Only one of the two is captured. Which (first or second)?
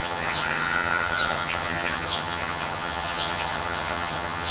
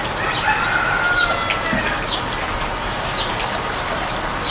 second